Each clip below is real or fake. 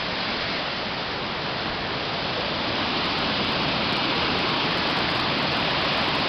real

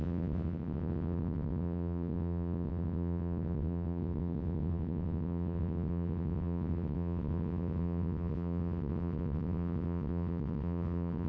fake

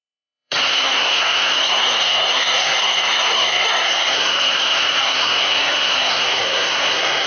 fake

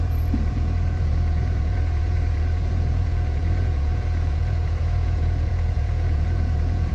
fake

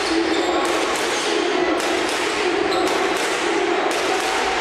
real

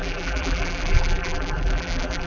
fake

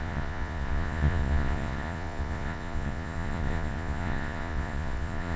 fake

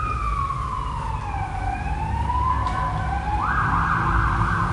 real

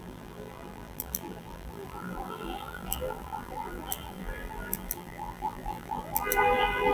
fake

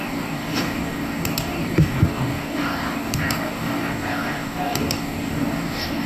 fake